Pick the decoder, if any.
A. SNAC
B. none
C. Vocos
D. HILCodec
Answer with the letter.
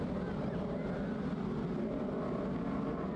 B